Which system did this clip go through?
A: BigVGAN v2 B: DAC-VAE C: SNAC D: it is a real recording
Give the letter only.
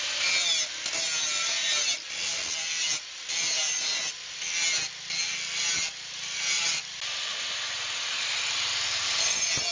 D